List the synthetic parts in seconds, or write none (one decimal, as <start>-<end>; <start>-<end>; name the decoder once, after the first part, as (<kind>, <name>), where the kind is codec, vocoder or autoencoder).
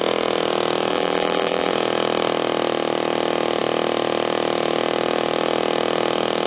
0.9-1.7 (vocoder, BigVGAN v2)